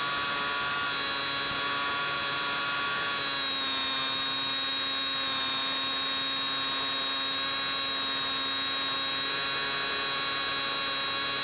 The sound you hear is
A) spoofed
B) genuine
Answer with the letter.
B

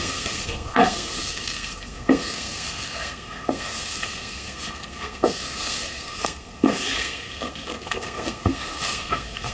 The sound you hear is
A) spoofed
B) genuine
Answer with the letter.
A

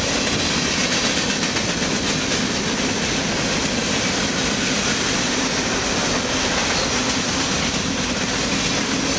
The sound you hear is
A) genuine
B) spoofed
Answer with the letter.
A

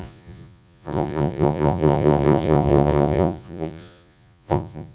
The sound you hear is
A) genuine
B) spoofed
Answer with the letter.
B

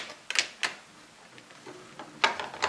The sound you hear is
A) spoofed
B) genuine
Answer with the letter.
B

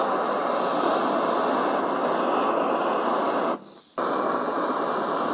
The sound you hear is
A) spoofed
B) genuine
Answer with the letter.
B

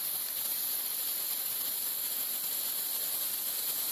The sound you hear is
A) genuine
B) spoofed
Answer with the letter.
A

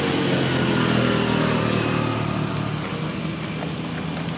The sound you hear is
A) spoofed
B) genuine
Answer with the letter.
B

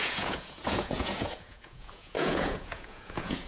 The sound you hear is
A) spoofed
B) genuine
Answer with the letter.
A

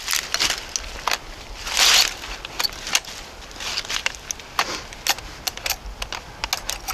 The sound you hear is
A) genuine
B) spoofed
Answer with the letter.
A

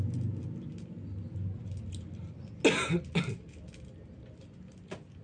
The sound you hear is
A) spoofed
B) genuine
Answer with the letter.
B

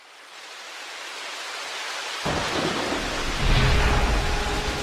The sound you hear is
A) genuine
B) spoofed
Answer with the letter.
A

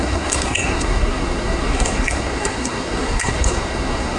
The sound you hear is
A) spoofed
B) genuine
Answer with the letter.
A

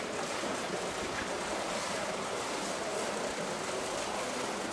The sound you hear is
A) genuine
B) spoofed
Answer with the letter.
A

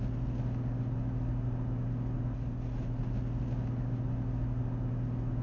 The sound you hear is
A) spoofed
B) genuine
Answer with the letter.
B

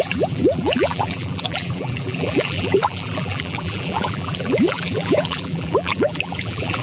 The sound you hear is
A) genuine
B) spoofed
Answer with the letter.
B